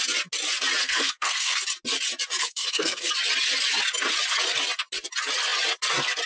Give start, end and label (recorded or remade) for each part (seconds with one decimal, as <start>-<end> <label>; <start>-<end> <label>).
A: 0.0-0.8 recorded; 0.8-1.6 remade; 1.6-2.4 recorded; 2.4-3.1 remade; 3.1-6.3 recorded